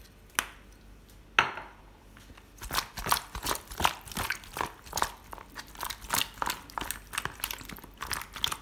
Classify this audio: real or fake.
real